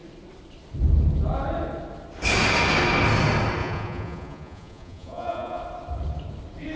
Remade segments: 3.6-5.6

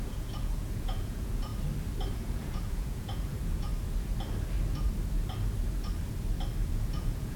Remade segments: 0.0-1.5; 2.1-3.7; 6.7-7.4

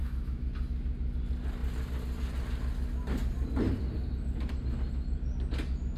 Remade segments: 0.0-0.5

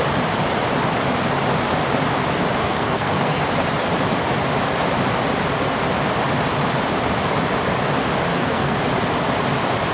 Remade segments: 2.6-3.4; 8.3-8.8

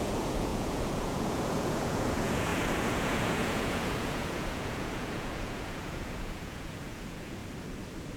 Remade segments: 0.0-7.4